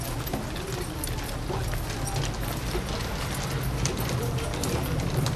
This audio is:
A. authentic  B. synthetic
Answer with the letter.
A